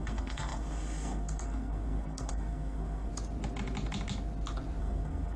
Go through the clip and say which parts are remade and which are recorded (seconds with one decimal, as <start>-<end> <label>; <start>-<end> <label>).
0.0-3.1 remade; 3.1-4.8 recorded; 4.8-5.4 remade